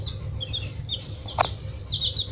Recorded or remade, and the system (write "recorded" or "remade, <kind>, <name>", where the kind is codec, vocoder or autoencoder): recorded